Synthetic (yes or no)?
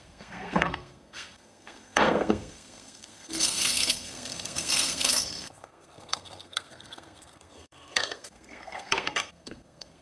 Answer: yes